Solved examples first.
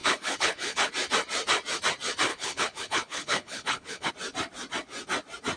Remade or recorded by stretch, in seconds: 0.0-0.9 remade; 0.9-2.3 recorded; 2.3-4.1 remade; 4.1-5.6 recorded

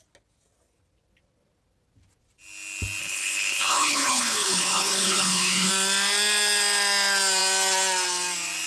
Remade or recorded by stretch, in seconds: 0.0-3.0 recorded; 3.0-5.7 remade; 5.7-8.7 recorded

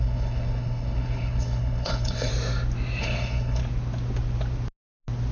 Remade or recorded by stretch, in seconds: 0.0-2.3 remade; 2.3-3.0 recorded; 3.0-3.6 remade; 3.6-5.3 recorded

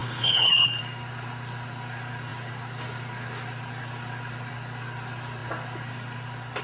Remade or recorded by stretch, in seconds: 0.0-0.8 remade; 0.8-6.6 recorded

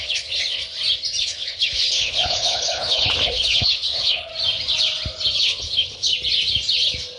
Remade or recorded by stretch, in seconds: 0.0-0.6 remade; 0.6-1.2 recorded; 1.2-4.3 remade; 4.3-5.4 recorded; 5.4-6.1 remade; 6.1-7.2 recorded

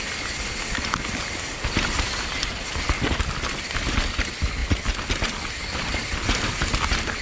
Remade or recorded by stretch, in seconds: 0.0-7.2 recorded

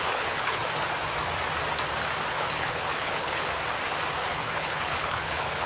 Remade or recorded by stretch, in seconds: 0.0-0.6 remade; 0.6-2.3 recorded; 2.3-3.5 remade; 3.5-4.2 recorded; 4.2-5.7 remade

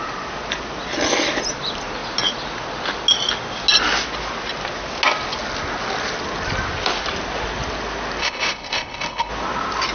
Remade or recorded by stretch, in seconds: 0.0-8.2 recorded; 8.2-9.3 remade; 9.3-9.9 recorded